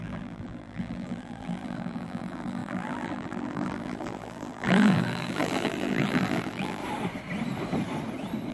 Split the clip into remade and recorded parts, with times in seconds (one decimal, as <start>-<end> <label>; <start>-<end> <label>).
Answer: 0.0-6.8 remade; 6.8-8.5 recorded